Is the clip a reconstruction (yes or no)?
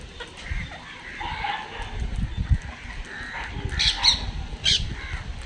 no